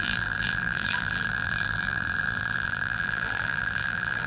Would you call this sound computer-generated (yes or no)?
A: yes